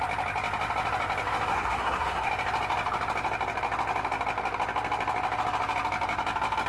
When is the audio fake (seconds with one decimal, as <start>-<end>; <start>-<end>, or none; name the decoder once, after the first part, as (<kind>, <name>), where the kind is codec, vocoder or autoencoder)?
1.5-2.3 (codec, SNAC)